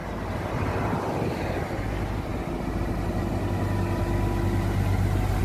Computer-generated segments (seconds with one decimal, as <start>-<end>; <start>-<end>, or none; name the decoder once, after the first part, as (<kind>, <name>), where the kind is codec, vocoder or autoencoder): none